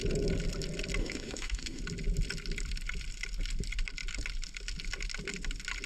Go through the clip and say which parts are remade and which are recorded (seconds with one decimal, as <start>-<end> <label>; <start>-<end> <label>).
0.0-1.0 recorded; 1.0-1.8 remade; 1.8-5.9 recorded